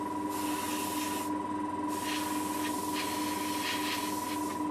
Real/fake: real